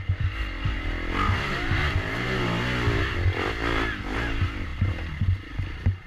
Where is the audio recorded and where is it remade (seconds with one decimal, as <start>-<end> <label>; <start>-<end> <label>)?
0.0-6.1 recorded